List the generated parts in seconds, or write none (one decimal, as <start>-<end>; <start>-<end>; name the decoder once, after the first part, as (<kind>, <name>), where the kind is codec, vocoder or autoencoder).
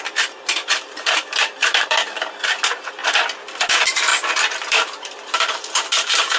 0.0-3.0 (vocoder, BigVGAN v2); 3.6-4.1; 4.7-6.4